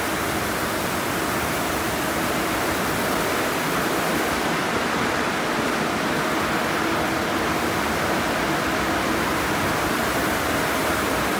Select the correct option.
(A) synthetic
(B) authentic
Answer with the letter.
B